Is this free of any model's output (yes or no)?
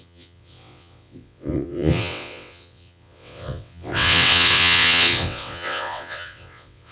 no